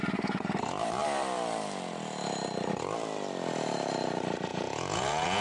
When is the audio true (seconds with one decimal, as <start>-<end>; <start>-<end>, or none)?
0.0-4.5